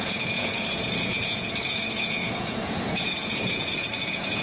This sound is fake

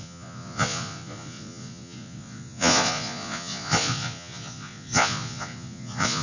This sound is fake